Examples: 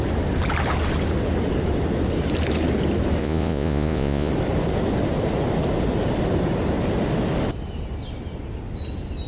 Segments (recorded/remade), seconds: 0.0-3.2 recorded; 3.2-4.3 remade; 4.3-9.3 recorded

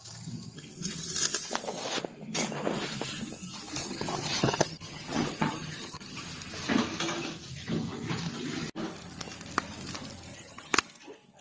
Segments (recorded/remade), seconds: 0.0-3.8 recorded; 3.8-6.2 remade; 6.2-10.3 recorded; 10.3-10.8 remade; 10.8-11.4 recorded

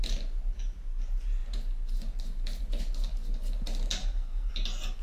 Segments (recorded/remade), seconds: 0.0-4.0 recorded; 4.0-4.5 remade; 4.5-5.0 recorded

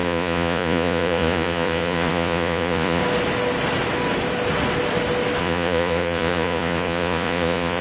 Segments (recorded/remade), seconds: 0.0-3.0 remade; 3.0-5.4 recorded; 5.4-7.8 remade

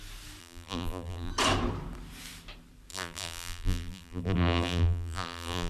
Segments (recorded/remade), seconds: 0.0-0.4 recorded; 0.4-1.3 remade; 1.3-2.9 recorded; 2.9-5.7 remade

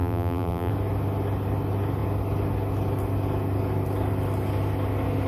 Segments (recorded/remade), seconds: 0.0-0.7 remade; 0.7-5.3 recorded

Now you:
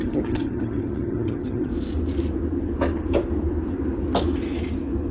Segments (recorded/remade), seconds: 0.0-1.7 remade; 1.7-5.1 recorded

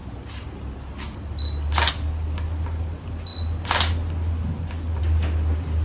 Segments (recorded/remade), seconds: 0.0-5.8 recorded